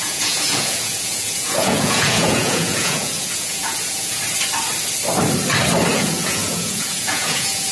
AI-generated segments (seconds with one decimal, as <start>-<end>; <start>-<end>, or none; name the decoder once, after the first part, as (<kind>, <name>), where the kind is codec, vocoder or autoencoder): 0.0-4.2 (vocoder, Vocos); 5.9-7.7